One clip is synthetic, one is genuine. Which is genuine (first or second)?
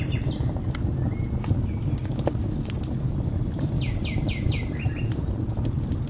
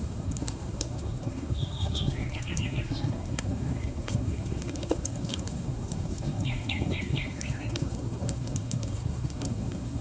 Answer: first